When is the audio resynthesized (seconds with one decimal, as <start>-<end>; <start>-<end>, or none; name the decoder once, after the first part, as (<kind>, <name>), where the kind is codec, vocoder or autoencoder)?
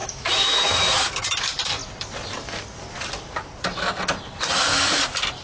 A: 0.0-1.0 (autoencoder, DAC-VAE)